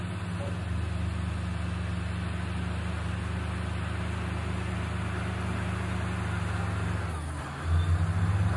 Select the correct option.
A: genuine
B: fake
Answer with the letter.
A